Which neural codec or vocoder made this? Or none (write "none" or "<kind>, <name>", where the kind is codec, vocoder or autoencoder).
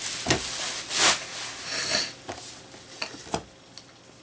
none